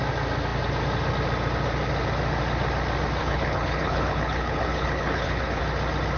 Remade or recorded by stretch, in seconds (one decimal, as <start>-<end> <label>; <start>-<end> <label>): 0.0-3.2 recorded; 3.2-5.6 remade; 5.6-6.2 recorded